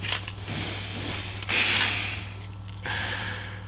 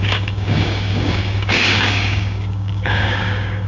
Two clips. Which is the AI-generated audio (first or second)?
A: second